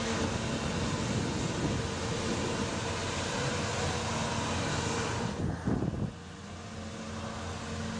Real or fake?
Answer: real